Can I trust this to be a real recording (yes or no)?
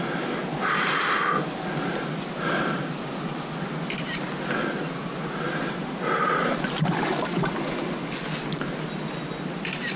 yes